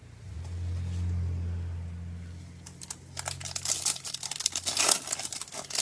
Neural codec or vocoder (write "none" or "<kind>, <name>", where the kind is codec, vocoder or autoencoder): none